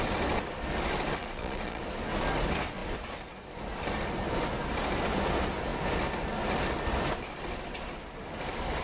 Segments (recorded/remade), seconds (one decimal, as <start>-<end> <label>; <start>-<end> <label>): 0.0-1.2 recorded; 1.2-1.8 remade; 1.8-8.8 recorded